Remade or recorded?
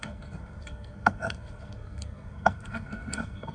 remade